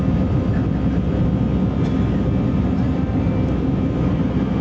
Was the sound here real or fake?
real